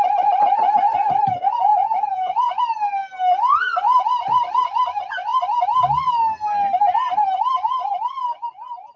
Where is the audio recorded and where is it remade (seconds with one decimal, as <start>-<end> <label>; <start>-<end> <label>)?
0.0-1.7 recorded; 1.7-2.6 remade; 2.6-9.0 recorded